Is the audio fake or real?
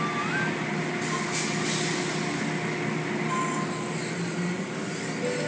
real